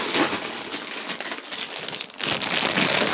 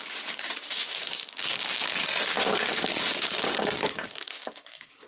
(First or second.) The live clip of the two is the first